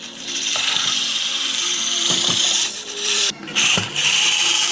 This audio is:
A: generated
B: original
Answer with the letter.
A